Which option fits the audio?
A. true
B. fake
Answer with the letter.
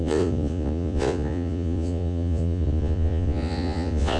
B